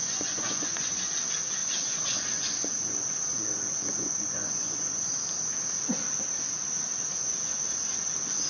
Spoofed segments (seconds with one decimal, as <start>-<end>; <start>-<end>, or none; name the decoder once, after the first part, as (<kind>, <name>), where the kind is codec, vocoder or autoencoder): 0.0-1.1 (vocoder, Vocos); 1.6-5.1